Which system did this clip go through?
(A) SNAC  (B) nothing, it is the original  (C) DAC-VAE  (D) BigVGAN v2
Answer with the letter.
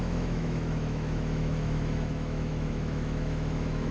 C